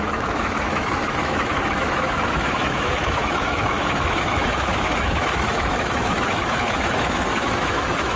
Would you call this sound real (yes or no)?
no